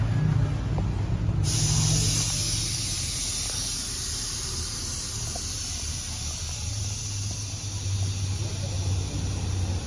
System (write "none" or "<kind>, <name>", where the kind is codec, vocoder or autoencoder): none